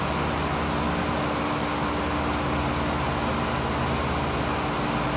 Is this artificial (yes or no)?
no